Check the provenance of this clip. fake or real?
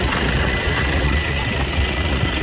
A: fake